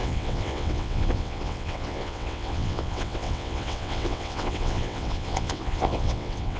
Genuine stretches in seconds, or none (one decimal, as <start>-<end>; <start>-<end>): none